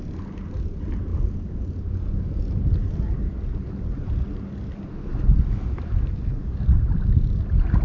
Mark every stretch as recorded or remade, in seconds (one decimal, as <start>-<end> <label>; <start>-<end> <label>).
0.0-7.8 recorded